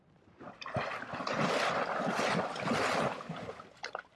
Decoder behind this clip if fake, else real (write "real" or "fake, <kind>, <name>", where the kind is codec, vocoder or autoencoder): real